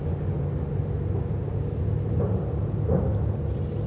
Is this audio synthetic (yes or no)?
no